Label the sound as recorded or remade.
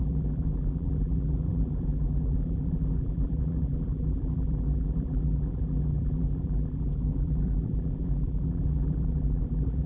remade